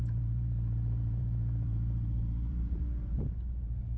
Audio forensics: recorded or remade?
remade